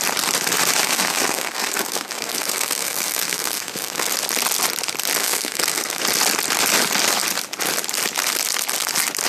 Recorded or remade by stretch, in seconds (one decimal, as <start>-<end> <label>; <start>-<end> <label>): 0.0-0.8 recorded; 0.8-4.1 remade; 4.1-5.2 recorded; 5.2-6.0 remade; 6.0-9.3 recorded